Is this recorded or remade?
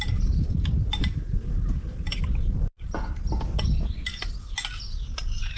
recorded